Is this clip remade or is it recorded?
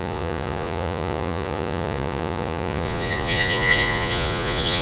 remade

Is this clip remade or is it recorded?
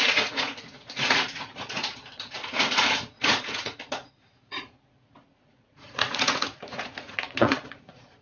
remade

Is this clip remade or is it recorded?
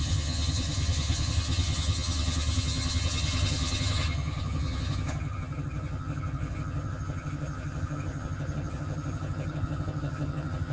remade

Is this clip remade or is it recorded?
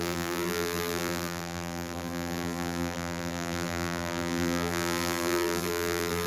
remade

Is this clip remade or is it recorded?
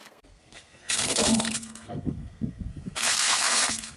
remade